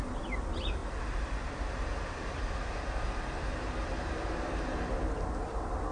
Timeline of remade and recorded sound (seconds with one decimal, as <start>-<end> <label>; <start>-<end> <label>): 0.0-5.9 recorded